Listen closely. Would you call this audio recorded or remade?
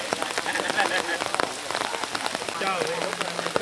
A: recorded